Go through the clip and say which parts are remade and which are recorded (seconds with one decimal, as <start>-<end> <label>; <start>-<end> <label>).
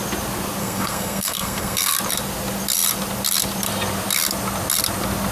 0.0-0.6 recorded; 0.6-1.9 remade; 1.9-5.3 recorded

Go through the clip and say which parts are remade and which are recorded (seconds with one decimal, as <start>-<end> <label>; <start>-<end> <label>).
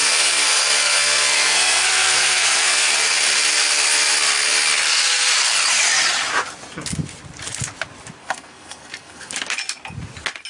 0.0-2.9 remade; 2.9-8.2 recorded; 8.2-9.3 remade; 9.3-10.5 recorded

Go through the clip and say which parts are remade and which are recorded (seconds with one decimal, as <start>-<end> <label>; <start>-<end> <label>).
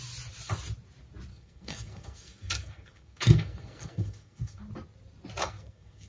0.0-1.3 recorded; 1.3-4.6 remade; 4.6-5.4 recorded; 5.4-6.1 remade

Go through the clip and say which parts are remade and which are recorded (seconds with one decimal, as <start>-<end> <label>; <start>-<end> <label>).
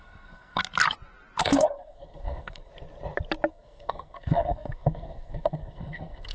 0.0-0.6 remade; 0.6-1.4 recorded; 1.4-2.7 remade; 2.7-3.5 recorded; 3.5-6.3 remade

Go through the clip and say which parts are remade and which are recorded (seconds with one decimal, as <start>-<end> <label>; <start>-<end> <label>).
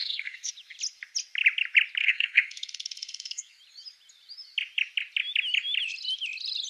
0.0-0.5 remade; 0.5-2.0 recorded; 2.0-3.6 remade; 3.6-6.7 recorded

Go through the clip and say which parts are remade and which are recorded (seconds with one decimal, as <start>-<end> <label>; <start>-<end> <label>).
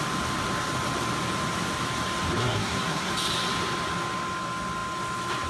0.0-2.4 recorded; 2.4-3.1 remade; 3.1-5.5 recorded